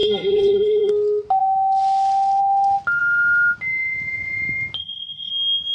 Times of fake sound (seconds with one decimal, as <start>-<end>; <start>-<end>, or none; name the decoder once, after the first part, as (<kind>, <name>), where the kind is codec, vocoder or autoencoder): 0.0-0.9 (codec, SNAC); 4.8-5.3